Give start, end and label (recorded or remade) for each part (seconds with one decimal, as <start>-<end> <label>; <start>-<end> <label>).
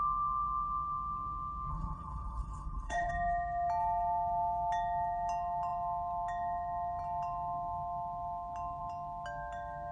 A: 0.0-1.7 recorded; 1.7-3.1 remade; 3.1-9.9 recorded